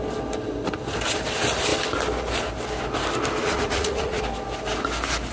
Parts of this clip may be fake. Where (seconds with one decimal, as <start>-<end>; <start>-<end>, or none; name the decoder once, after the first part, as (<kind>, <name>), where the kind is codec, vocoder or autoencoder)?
3.4-4.2 (vocoder, Vocos)